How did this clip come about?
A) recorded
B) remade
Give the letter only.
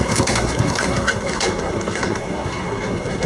B